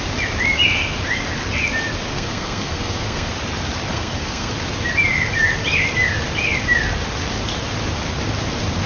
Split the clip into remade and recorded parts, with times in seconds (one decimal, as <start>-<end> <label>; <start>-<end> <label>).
0.0-2.1 recorded; 2.1-3.3 remade; 3.3-3.9 recorded; 3.9-4.5 remade; 4.5-8.9 recorded